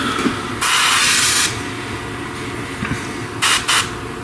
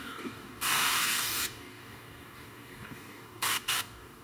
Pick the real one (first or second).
first